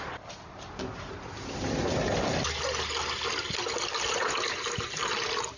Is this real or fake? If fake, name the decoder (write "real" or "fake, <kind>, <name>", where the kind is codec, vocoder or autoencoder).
real